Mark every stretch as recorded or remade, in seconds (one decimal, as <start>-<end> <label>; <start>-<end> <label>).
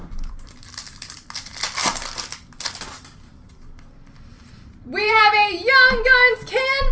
0.0-0.5 remade; 0.5-4.3 recorded; 4.3-5.2 remade; 5.2-6.9 recorded